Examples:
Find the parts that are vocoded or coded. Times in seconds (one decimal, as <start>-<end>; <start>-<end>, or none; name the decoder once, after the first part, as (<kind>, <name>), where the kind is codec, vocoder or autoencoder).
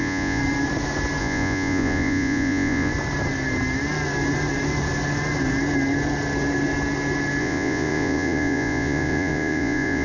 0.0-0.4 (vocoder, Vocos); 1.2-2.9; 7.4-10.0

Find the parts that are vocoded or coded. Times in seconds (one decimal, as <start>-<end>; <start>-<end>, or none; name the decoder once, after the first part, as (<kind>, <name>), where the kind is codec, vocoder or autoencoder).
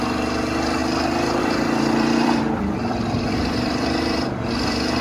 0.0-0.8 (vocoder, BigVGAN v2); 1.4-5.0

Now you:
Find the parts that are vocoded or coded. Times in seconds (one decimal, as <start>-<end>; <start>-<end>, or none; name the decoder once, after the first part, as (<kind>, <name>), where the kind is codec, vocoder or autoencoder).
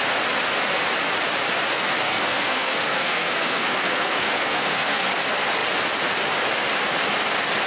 2.1-5.1 (codec, SNAC)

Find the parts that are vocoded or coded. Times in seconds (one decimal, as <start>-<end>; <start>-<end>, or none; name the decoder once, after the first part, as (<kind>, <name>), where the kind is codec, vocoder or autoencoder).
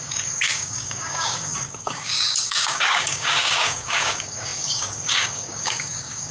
0.0-6.3 (codec, DAC)